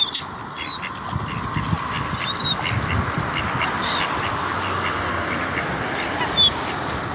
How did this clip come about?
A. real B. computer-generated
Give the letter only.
A